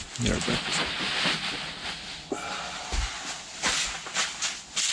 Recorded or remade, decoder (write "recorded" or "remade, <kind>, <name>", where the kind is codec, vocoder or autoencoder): recorded